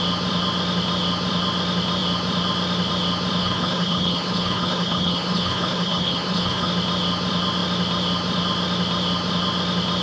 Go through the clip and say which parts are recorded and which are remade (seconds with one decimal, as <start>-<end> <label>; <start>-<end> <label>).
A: 0.0-3.4 recorded; 3.4-6.7 remade; 6.7-10.0 recorded